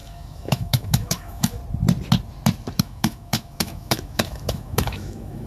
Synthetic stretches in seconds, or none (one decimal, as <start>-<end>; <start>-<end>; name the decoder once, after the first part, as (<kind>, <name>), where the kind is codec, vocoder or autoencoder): 0.0-1.6 (autoencoder, DAC-VAE); 2.8-5.5